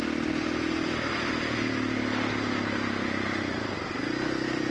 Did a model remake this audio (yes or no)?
no